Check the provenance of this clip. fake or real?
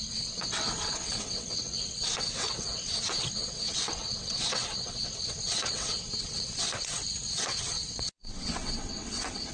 fake